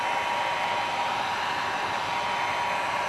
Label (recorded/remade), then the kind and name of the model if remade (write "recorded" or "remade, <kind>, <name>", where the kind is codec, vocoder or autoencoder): recorded